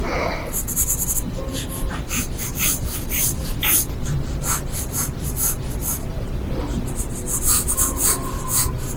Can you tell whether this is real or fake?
real